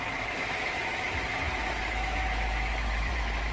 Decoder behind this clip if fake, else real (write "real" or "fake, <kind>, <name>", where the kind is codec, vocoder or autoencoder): fake, autoencoder, DAC-VAE